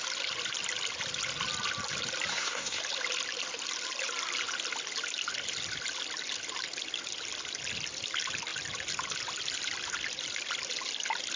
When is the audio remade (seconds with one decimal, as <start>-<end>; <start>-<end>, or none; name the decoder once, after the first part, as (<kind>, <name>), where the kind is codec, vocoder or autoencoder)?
2.3-2.8 (codec, SNAC)